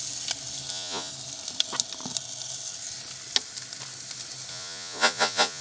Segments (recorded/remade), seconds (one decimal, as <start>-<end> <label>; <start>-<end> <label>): 0.0-0.7 recorded; 0.7-1.1 remade; 1.1-4.5 recorded; 4.5-5.6 remade